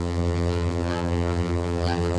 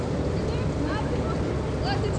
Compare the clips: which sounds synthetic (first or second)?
first